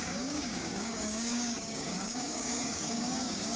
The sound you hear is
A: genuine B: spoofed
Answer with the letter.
B